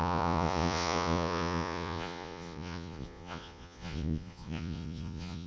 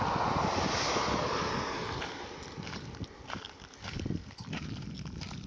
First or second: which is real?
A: second